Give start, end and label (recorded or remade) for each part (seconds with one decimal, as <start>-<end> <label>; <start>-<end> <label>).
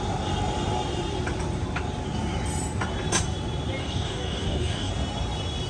0.0-3.8 recorded; 3.8-4.9 remade; 4.9-5.7 recorded